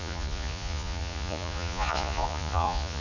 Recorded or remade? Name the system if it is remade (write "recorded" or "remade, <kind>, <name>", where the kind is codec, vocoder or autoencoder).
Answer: remade, vocoder, Vocos